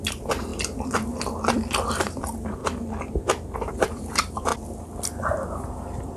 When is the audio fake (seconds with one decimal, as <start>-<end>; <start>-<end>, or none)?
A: 0.0-0.5; 1.9-2.6; 3.7-4.5; 5.1-6.2

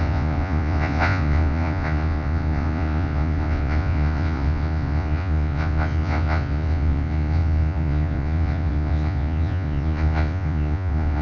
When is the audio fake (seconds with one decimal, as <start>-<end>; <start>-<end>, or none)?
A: 0.0-11.2

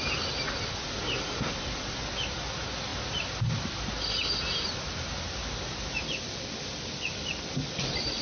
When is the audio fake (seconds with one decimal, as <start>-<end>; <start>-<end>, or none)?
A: none

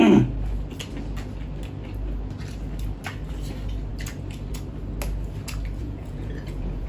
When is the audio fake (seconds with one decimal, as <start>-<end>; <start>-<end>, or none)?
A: 5.8-6.9